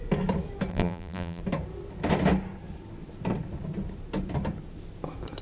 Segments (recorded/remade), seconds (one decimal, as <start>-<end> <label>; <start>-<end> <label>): 0.0-0.7 recorded; 0.7-1.4 remade; 1.4-5.4 recorded